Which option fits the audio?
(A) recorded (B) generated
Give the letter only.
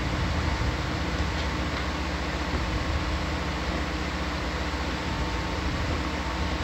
A